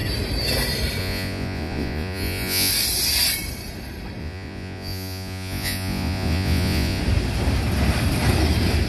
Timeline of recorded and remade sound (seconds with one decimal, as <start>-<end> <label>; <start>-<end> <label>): 0.0-1.0 recorded; 1.0-2.7 remade; 2.7-4.2 recorded; 4.2-7.0 remade; 7.0-8.9 recorded